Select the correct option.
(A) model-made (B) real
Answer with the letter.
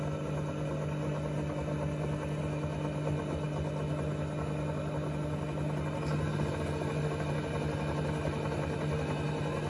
B